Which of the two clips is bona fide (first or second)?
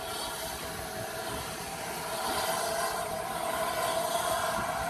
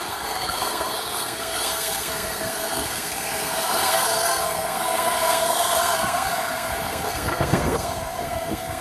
first